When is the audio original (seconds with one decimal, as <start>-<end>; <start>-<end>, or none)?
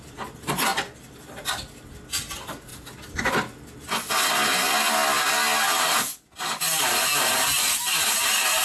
0.0-8.6